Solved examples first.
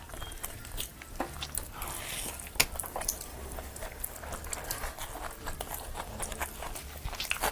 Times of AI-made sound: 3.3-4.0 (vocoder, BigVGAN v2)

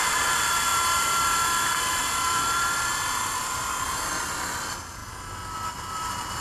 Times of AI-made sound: 0.0-5.0 (vocoder, BigVGAN v2); 5.7-6.4

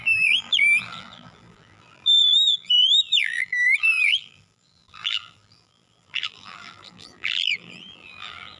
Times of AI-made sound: 0.0-8.6 (vocoder, BigVGAN v2)

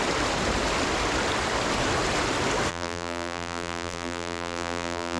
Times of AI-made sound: 2.7-5.2 (vocoder, BigVGAN v2)

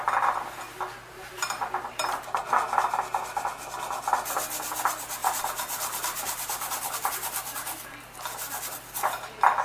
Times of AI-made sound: 1.1-2.4 (vocoder, BigVGAN v2); 5.2-7.1

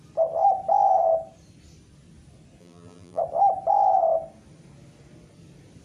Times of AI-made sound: 2.6-3.2 (vocoder, BigVGAN v2)

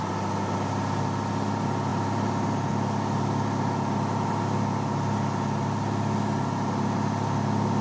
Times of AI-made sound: 1.9-2.7 (vocoder, BigVGAN v2)

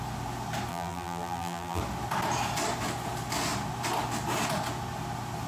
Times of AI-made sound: 0.7-1.8 (vocoder, BigVGAN v2)